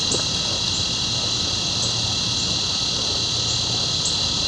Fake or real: real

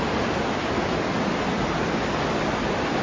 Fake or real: real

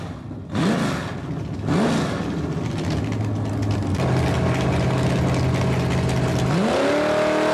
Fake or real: real